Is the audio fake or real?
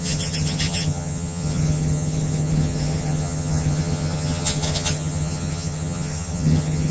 fake